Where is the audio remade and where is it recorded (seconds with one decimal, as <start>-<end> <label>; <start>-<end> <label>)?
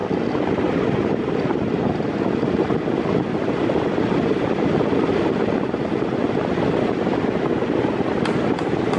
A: 0.0-9.0 recorded